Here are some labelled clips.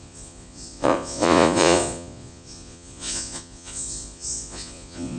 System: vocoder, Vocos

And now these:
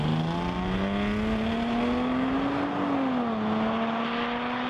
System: none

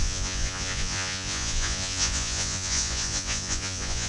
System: vocoder, Vocos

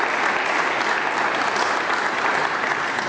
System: none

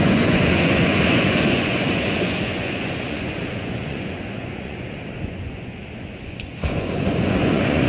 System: vocoder, Vocos